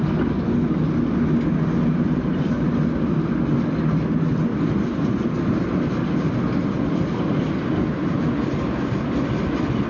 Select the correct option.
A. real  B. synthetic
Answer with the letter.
A